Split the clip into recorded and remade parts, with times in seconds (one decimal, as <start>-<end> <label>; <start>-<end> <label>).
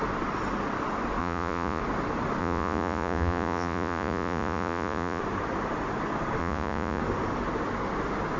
0.0-1.2 recorded; 1.2-1.8 remade; 1.8-2.4 recorded; 2.4-5.2 remade; 5.2-6.4 recorded; 6.4-7.0 remade; 7.0-8.4 recorded